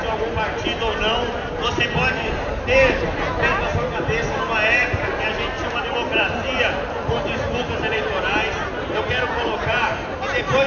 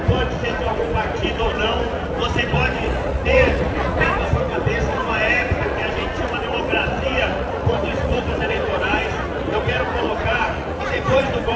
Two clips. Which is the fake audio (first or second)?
second